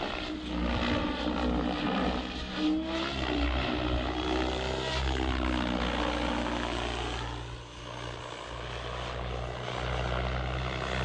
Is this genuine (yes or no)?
yes